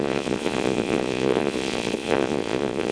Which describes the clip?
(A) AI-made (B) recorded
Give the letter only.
A